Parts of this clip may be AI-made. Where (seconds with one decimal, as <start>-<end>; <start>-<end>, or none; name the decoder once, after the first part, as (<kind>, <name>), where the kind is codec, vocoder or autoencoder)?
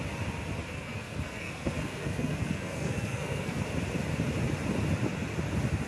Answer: 0.6-3.6 (codec, SNAC)